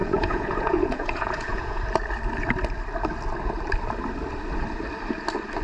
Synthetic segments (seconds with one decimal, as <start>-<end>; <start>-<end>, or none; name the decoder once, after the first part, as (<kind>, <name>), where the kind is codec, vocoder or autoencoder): 0.0-1.8 (vocoder, Vocos)